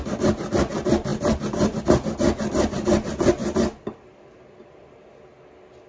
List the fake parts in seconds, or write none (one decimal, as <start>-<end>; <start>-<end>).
1.1-1.8; 3.4-5.1